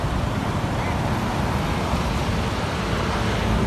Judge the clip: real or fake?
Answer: real